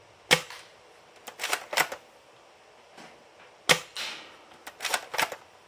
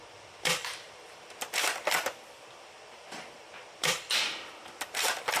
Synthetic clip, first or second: second